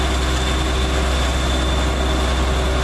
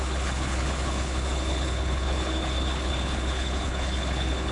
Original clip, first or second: first